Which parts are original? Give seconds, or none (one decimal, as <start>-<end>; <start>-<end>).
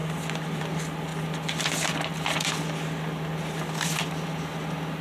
0.0-5.0